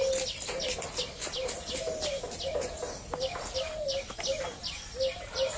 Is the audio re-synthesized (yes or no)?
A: no